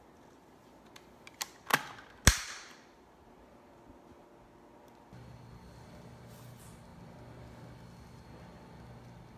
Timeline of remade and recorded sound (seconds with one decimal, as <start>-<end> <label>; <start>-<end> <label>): 0.0-9.4 recorded

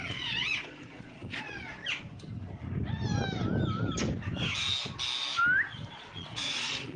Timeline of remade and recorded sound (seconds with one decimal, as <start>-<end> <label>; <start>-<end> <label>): 0.0-1.8 remade; 1.8-5.9 recorded; 5.9-7.0 remade

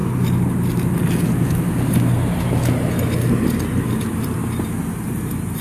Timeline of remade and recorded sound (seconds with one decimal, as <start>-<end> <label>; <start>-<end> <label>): 0.0-5.6 recorded

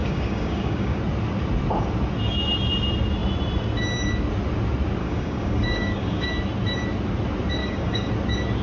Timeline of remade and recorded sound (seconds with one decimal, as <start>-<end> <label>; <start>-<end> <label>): 0.0-1.0 remade; 1.0-5.0 recorded; 5.0-6.3 remade; 6.3-7.6 recorded; 7.6-8.1 remade; 8.1-8.6 recorded

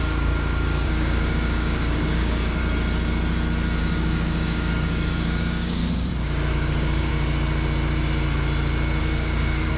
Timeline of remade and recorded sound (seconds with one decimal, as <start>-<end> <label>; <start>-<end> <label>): 0.0-2.6 remade; 2.6-3.8 recorded; 3.8-5.8 remade; 5.8-6.5 recorded; 6.5-7.1 remade; 7.1-9.0 recorded; 9.0-9.8 remade